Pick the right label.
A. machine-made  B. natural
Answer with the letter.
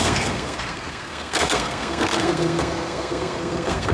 A